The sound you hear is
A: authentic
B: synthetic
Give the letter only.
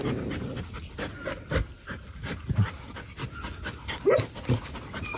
A